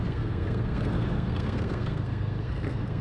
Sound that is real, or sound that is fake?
fake